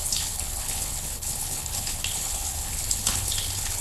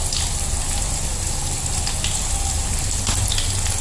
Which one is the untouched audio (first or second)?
second